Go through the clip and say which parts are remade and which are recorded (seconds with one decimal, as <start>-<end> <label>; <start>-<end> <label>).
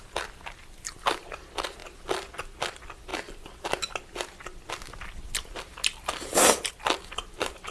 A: 0.0-7.7 recorded